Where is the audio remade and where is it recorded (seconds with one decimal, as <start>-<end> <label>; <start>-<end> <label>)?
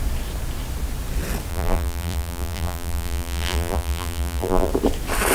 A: 0.0-1.5 recorded; 1.5-4.7 remade; 4.7-5.3 recorded